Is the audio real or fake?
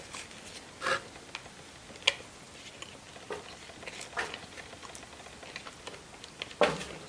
real